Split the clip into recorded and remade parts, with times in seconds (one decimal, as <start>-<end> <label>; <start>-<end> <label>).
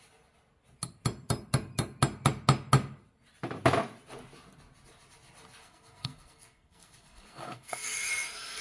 0.0-5.6 recorded; 5.6-8.6 remade